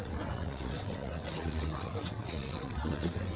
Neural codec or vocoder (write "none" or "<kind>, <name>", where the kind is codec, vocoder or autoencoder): vocoder, WaveNeXt